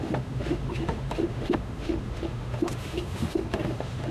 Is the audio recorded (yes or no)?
no